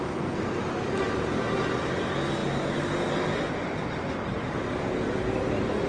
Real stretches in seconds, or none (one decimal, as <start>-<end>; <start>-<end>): 0.6-5.9